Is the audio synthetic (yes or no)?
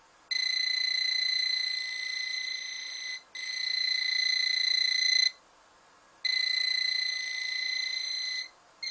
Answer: no